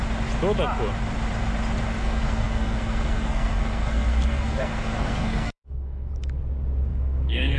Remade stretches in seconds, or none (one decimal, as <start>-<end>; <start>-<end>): 2.0-6.1; 6.9-7.6